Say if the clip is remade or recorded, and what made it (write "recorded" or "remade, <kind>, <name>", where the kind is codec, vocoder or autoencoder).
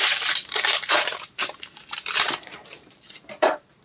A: remade, vocoder, BigVGAN v2